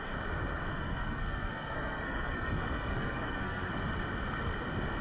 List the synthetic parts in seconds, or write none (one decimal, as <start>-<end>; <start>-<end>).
0.7-3.7